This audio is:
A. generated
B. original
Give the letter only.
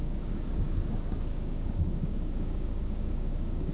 A